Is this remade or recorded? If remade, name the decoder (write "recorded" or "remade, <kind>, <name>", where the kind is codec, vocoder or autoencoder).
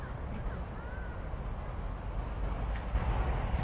recorded